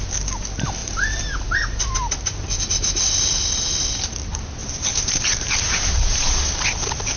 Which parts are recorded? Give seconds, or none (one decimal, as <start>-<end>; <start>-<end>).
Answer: 0.0-0.8; 2.6-4.6